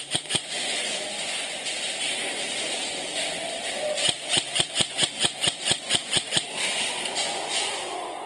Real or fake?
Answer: fake